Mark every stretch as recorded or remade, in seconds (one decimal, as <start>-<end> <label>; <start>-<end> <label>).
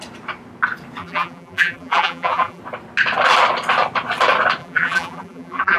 0.0-1.0 recorded; 1.0-2.6 remade; 2.6-4.6 recorded; 4.6-5.8 remade